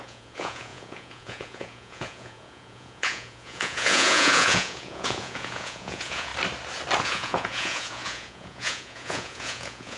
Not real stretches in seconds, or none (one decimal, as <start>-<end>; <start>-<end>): 0.0-6.3; 7.0-10.0